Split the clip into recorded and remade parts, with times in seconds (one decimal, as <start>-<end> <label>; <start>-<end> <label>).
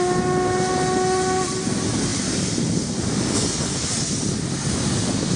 0.0-5.4 recorded